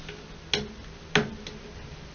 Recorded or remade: recorded